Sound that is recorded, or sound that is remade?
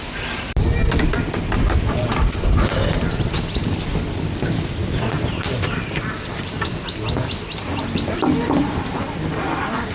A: recorded